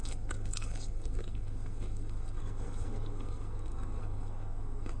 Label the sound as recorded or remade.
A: remade